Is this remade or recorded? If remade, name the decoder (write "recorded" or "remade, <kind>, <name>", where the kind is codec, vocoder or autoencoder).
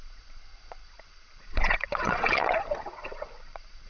remade, vocoder, Vocos